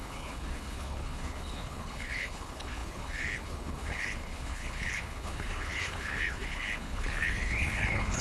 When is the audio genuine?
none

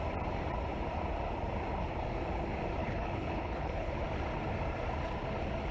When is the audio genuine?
0.0-2.8; 3.9-5.7

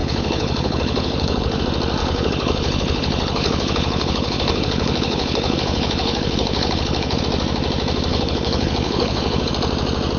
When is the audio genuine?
1.6-2.0; 7.2-8.1; 9.5-10.2

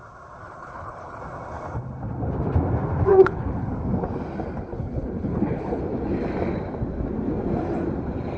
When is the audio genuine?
0.0-0.4; 1.2-3.1; 3.7-4.7; 5.8-8.4